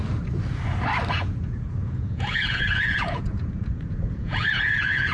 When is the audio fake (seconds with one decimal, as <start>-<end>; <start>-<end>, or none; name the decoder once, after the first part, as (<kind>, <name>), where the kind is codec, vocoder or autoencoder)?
1.1-5.1 (vocoder, Vocos)